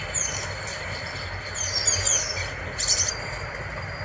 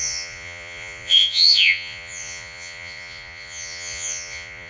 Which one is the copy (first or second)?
second